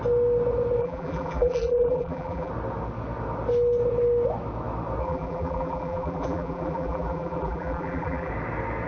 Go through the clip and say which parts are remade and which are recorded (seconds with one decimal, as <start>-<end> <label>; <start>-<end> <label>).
0.0-0.8 recorded; 0.8-2.5 remade; 2.5-5.0 recorded; 5.0-8.3 remade; 8.3-8.9 recorded